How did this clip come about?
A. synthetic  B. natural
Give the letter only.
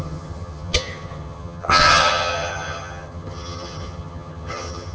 A